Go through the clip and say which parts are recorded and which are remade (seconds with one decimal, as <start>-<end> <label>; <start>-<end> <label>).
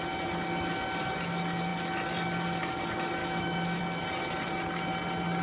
0.0-3.2 recorded; 3.2-3.8 remade; 3.8-5.4 recorded